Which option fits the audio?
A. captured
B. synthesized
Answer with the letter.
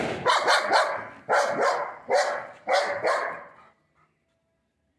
A